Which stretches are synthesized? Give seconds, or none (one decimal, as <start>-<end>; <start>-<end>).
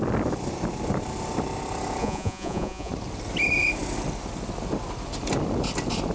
2.0-2.9